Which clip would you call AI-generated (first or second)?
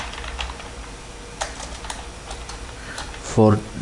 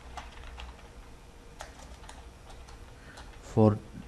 second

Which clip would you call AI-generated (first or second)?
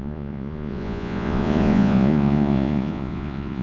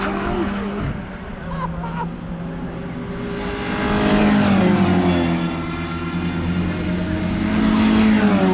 first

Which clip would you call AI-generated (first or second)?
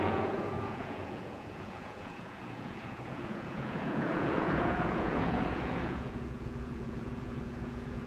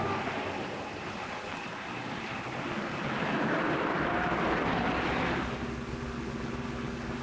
first